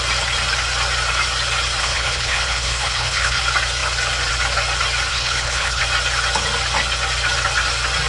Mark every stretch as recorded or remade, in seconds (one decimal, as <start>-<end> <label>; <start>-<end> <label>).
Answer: 0.0-1.8 recorded; 1.8-3.4 remade; 3.4-5.1 recorded; 5.1-5.8 remade; 5.8-8.1 recorded